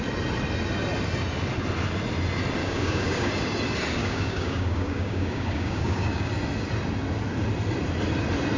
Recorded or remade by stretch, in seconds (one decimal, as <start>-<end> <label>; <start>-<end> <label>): 0.0-2.6 recorded; 2.6-3.3 remade; 3.3-4.0 recorded; 4.0-6.3 remade; 6.3-8.6 recorded

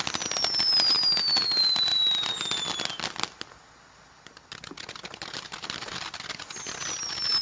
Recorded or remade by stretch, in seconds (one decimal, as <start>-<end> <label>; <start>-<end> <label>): 0.0-7.4 recorded

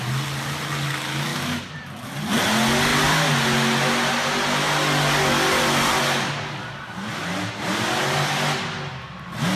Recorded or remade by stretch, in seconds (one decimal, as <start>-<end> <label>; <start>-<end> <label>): 0.0-9.6 recorded

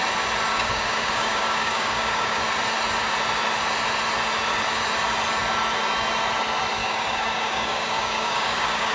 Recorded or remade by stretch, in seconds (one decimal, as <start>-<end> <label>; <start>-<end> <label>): 0.0-0.5 recorded; 0.5-2.4 remade; 2.4-6.8 recorded; 6.8-8.9 remade

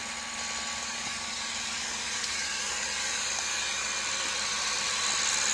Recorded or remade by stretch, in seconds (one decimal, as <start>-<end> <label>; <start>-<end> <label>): 0.0-0.8 recorded; 0.8-3.9 remade; 3.9-5.5 recorded

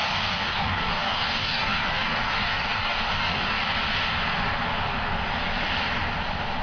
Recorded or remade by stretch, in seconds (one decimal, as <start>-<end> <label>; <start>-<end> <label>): 0.0-3.7 remade; 3.7-6.6 recorded

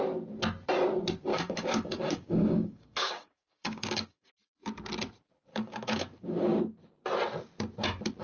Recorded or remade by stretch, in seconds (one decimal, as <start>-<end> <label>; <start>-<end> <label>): 0.0-1.3 recorded; 1.3-4.3 remade; 4.3-5.5 recorded; 5.5-6.6 remade; 6.6-8.2 recorded